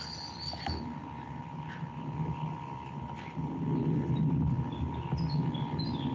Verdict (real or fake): real